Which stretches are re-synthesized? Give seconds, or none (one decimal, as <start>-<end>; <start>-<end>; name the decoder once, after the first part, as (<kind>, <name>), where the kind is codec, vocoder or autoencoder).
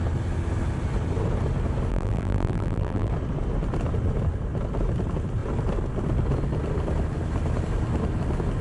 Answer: 1.9-3.1 (vocoder, BigVGAN v2)